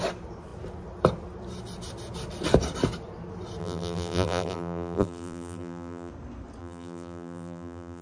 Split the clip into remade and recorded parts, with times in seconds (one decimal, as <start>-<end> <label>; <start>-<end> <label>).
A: 0.0-3.6 recorded; 3.6-6.1 remade; 6.1-6.6 recorded; 6.6-8.0 remade

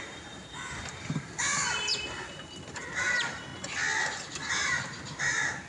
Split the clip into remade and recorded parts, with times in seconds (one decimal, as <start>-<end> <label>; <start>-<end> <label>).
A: 0.0-3.5 remade; 3.5-4.3 recorded; 4.3-5.7 remade

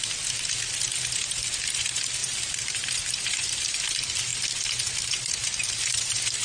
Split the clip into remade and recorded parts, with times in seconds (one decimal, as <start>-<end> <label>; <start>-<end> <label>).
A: 0.0-2.2 recorded; 2.2-3.8 remade; 3.8-5.4 recorded; 5.4-6.4 remade

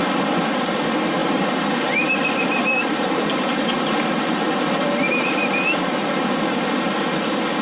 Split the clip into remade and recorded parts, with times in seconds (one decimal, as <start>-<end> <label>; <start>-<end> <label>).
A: 0.0-1.2 recorded; 1.2-3.8 remade; 3.8-7.6 recorded

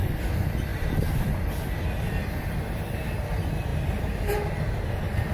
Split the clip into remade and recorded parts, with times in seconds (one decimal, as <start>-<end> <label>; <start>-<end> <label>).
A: 0.0-3.7 remade; 3.7-5.3 recorded

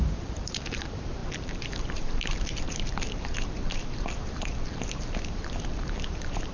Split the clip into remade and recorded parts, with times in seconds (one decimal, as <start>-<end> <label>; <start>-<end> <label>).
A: 0.0-6.5 remade

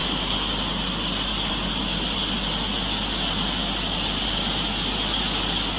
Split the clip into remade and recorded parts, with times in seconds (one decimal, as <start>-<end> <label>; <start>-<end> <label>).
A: 0.0-1.5 recorded; 1.5-2.2 remade; 2.2-5.8 recorded